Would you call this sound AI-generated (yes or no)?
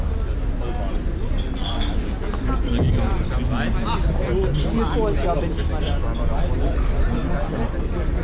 no